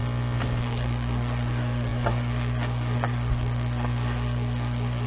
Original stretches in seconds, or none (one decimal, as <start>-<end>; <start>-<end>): 0.0-0.6